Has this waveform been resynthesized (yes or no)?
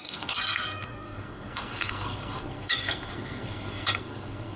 yes